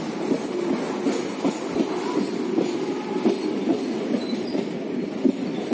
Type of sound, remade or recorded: recorded